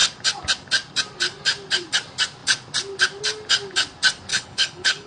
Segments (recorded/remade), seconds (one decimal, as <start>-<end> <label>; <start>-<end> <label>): 0.0-4.3 recorded; 4.3-5.1 remade